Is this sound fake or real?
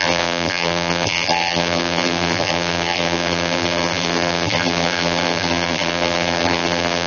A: fake